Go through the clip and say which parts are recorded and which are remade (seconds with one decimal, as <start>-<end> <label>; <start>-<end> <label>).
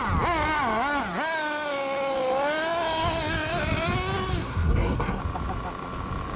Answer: 0.0-4.4 recorded; 4.4-5.2 remade; 5.2-6.4 recorded